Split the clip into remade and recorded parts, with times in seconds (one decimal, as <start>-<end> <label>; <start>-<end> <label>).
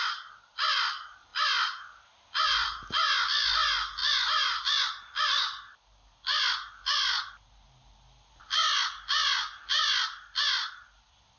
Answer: 0.0-11.4 recorded